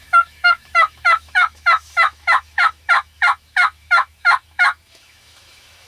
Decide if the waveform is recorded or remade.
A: remade